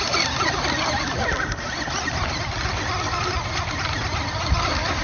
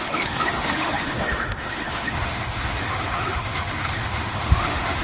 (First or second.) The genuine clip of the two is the first